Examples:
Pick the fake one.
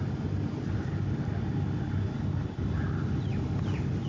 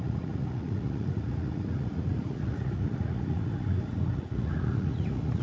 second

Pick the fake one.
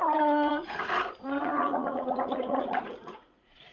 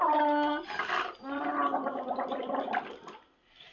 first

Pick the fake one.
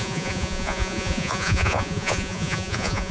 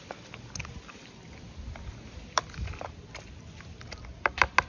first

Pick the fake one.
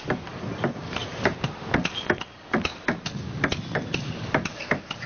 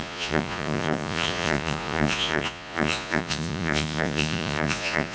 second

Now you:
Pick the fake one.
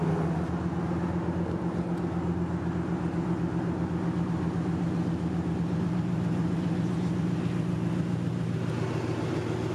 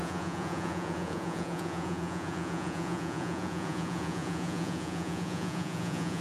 second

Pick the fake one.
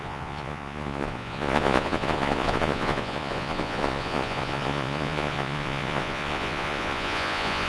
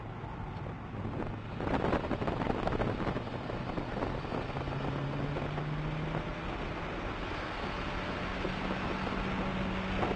first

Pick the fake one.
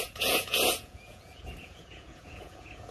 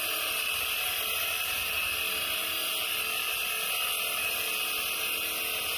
first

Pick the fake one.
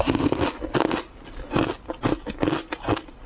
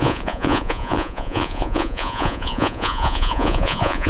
second